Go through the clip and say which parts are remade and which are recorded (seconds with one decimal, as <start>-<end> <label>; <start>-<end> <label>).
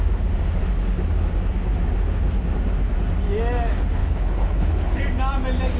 0.0-4.0 recorded; 4.0-5.0 remade; 5.0-5.8 recorded